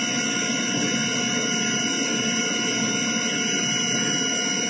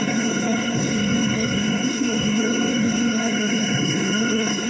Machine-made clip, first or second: second